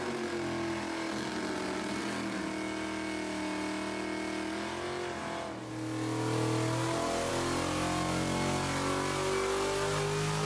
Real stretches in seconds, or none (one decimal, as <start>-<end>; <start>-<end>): 0.0-10.4